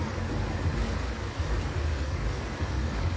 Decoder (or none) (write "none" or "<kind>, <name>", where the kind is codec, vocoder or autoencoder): codec, DAC